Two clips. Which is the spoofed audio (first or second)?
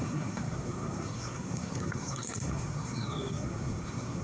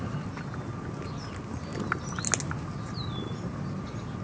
first